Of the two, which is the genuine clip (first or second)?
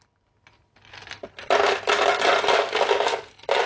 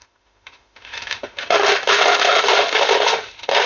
first